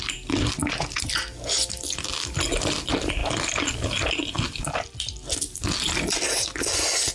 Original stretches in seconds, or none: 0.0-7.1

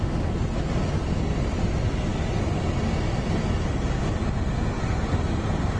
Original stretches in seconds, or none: 0.0-5.8

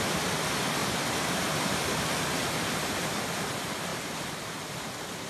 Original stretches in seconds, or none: 0.0-0.8; 3.2-3.9; 4.5-5.3

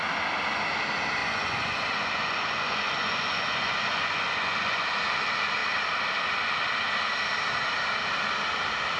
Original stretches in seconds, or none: 0.0-1.2; 4.9-9.0

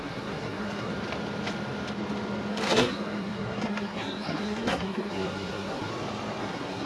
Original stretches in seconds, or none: 0.9-2.5; 5.9-6.4

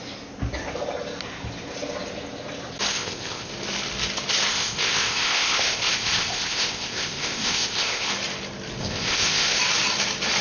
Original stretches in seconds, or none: 0.0-2.9; 3.5-4.5; 8.1-8.8; 9.6-10.4